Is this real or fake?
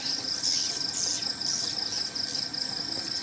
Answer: real